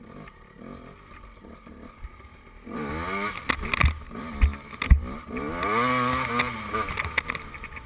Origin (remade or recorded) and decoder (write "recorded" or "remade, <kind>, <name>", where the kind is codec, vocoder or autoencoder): recorded